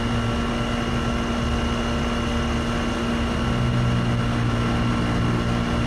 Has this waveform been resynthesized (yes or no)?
no